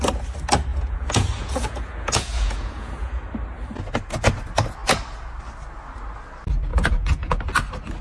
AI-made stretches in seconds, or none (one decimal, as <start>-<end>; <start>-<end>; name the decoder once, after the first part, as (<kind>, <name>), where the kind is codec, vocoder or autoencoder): 0.7-3.2 (vocoder, Vocos); 6.7-7.4